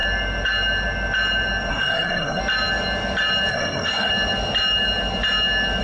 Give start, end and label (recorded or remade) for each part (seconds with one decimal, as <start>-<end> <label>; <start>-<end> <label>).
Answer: 0.0-1.7 recorded; 1.7-2.4 remade; 2.4-3.5 recorded; 3.5-4.1 remade; 4.1-5.8 recorded